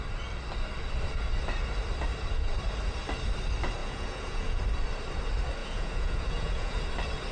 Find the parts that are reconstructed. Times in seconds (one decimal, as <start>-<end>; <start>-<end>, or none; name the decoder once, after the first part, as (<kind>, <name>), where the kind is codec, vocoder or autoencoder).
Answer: 3.8-4.6 (vocoder, Vocos); 5.6-6.8